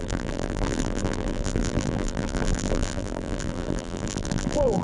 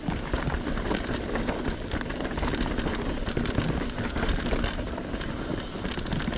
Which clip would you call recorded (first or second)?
second